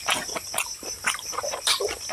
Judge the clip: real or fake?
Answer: real